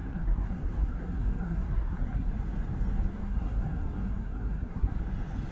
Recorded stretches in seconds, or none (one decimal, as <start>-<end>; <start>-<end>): 2.3-3.1; 5.0-5.5